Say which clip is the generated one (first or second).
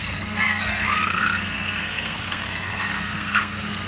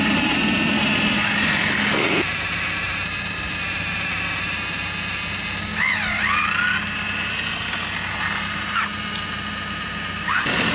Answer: first